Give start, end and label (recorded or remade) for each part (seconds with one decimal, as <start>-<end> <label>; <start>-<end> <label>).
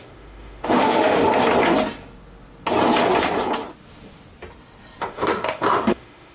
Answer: 0.0-1.2 remade; 1.2-5.0 recorded; 5.0-6.3 remade